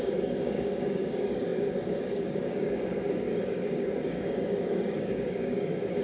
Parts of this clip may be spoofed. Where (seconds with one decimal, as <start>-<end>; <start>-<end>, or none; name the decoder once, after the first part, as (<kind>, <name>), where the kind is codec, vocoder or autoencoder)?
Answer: 0.0-6.0 (codec, DAC)